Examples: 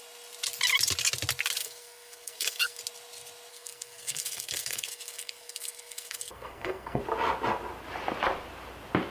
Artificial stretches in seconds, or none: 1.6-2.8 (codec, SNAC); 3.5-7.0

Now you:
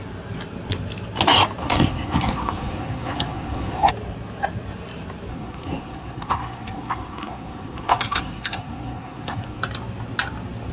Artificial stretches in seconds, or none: 1.6-3.9 (codec, SNAC); 5.3-9.6

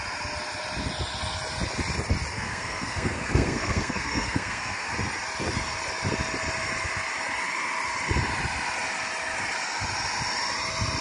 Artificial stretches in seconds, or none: 2.3-4.9 (codec, SNAC)

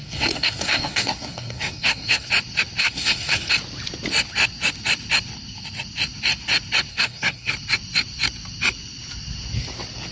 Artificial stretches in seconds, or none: 0.0-2.3 (codec, SNAC); 2.8-3.5; 6.9-7.5

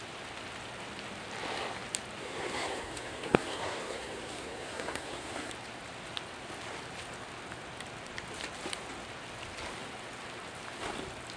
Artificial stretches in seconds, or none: 2.2-5.5 (codec, SNAC)

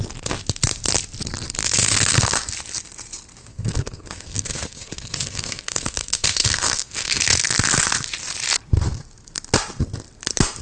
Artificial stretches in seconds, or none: 1.6-2.5 (codec, SNAC); 3.4-7.2

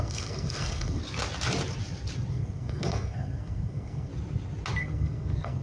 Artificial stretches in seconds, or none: 0.0-1.0 (codec, SNAC); 2.3-4.1; 4.8-5.6